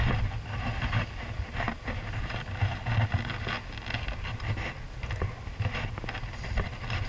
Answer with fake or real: real